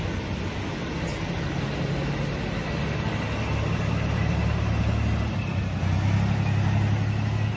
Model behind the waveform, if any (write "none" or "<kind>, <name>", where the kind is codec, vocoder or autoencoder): none